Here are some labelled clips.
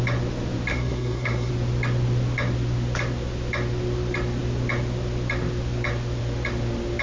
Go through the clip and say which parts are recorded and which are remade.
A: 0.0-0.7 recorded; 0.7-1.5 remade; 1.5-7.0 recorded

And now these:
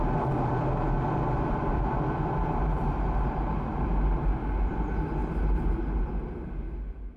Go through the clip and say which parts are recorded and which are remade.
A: 0.0-7.2 recorded

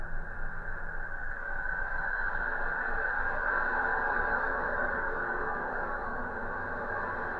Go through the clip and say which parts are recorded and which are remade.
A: 0.0-1.1 recorded; 1.1-2.4 remade; 2.4-2.8 recorded; 2.8-3.5 remade; 3.5-3.9 recorded; 3.9-6.3 remade; 6.3-7.4 recorded

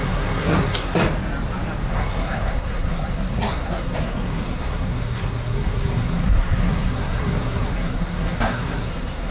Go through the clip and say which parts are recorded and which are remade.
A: 0.0-1.0 remade; 1.0-1.9 recorded; 1.9-9.3 remade

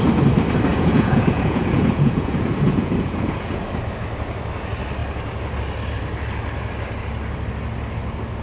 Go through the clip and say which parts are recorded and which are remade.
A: 0.0-0.7 recorded; 0.7-3.6 remade; 3.6-8.4 recorded

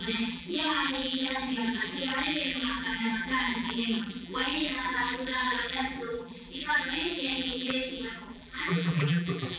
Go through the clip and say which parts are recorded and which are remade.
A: 0.0-9.6 remade

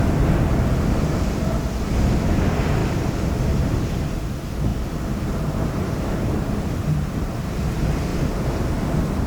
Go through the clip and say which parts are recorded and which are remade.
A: 0.0-9.3 recorded

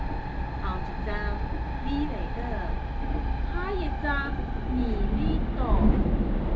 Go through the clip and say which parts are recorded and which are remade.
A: 0.0-6.6 recorded